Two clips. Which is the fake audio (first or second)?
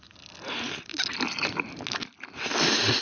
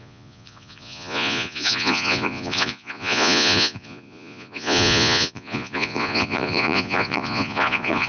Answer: second